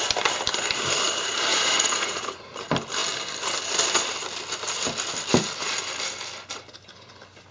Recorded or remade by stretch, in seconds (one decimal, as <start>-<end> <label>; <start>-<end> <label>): 0.0-1.5 recorded; 1.5-2.5 remade; 2.5-7.5 recorded